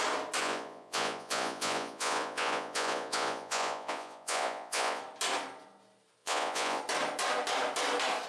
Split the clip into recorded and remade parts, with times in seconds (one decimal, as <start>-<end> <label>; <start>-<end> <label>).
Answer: 0.0-0.4 recorded; 0.4-5.0 remade; 5.0-6.2 recorded; 6.2-6.8 remade; 6.8-8.3 recorded